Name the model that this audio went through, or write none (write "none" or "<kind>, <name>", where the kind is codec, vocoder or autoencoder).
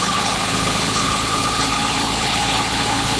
codec, HILCodec